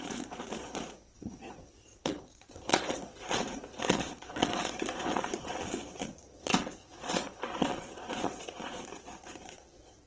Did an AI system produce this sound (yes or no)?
yes